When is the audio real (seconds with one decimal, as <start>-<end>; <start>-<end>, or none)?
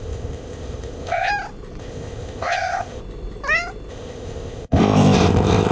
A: 1.3-1.8; 3.0-3.9